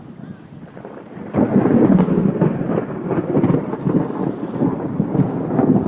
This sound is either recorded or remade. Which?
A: recorded